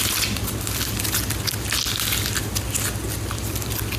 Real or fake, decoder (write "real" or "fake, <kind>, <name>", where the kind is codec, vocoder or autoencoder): real